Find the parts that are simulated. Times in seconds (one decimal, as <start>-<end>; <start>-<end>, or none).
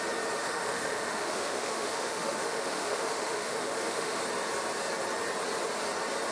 0.4-4.2